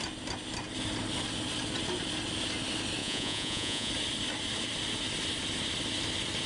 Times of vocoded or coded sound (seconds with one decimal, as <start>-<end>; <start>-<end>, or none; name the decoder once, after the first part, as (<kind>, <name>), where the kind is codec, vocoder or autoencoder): 3.0-3.9 (vocoder, Vocos)